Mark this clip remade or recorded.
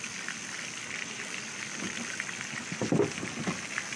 recorded